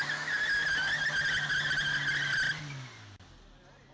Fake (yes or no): no